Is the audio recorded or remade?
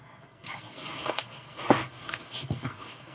remade